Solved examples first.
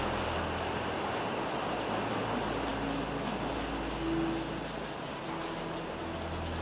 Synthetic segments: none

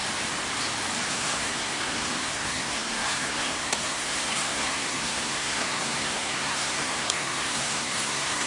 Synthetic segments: 1.1-8.5 (codec, SNAC)

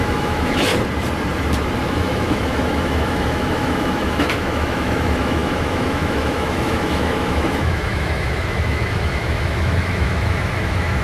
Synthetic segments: 0.0-0.7 (autoencoder, DAC-VAE); 1.8-11.0

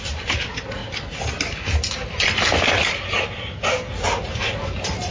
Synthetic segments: 0.0-0.8 (vocoder, BigVGAN v2); 3.9-5.1

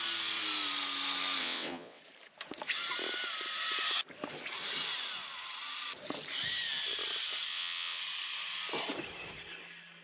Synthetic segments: 1.4-2.0 (vocoder, WaveNeXt); 7.5-8.0

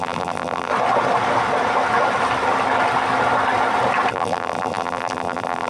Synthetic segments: 0.0-0.7 (vocoder, BigVGAN v2); 4.1-5.7